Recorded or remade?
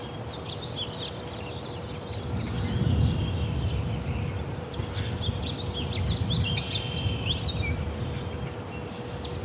recorded